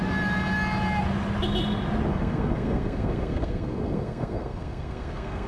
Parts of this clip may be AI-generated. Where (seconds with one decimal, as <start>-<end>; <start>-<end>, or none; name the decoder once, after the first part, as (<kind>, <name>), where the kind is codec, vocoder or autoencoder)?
2.1-5.5 (codec, SNAC)